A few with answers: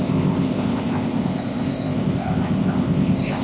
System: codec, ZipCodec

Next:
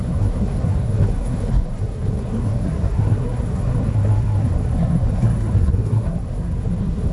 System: codec, SNAC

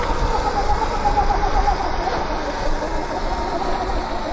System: none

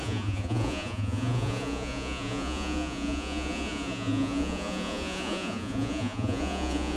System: vocoder, Vocos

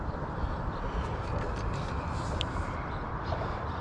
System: none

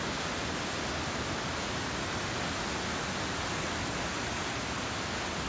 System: none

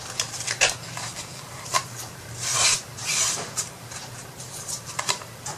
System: vocoder, BigVGAN v2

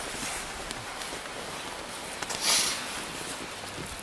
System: none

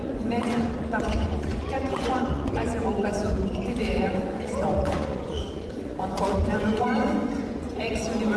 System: vocoder, Vocos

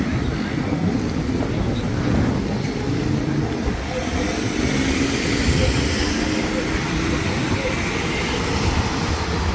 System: none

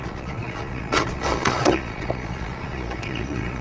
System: vocoder, Vocos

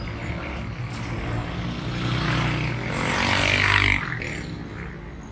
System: none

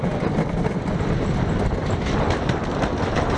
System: none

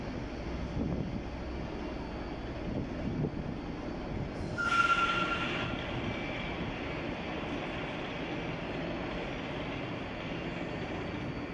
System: none